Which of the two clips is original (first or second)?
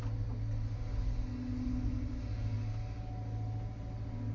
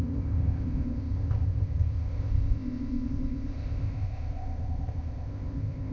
first